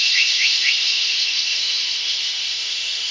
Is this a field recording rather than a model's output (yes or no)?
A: no